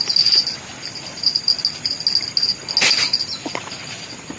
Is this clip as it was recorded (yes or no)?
yes